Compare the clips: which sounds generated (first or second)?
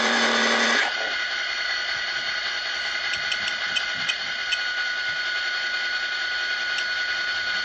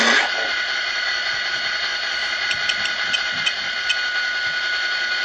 first